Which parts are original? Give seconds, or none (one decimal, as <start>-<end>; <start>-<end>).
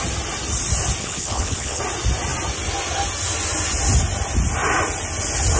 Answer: 0.0-1.0; 1.8-5.6